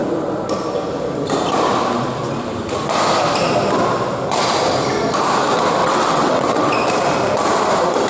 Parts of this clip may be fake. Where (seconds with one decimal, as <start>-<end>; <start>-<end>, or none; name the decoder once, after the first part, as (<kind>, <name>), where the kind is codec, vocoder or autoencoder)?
5.8-6.7 (vocoder, WaveNeXt)